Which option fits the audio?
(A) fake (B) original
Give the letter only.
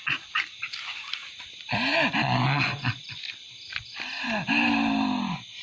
B